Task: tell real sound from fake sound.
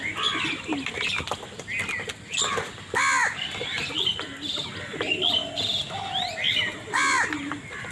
real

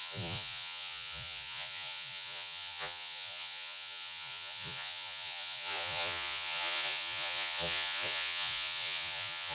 fake